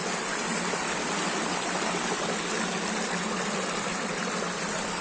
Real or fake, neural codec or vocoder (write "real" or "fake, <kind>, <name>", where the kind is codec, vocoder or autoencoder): real